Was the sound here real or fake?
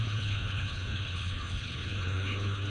fake